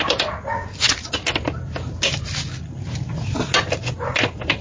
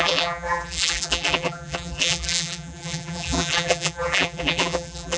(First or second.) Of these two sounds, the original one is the first